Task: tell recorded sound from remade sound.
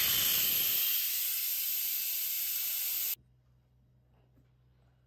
recorded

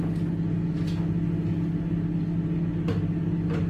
recorded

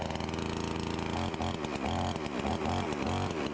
recorded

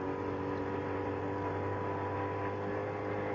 recorded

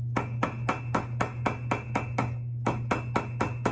recorded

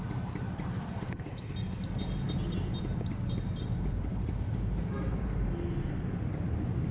recorded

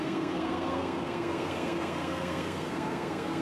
remade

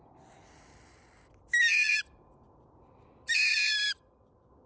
recorded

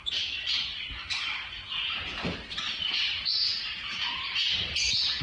recorded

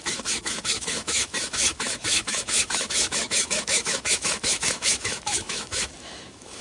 remade